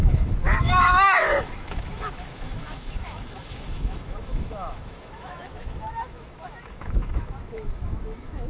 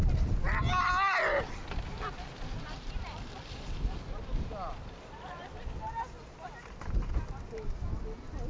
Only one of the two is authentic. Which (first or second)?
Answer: second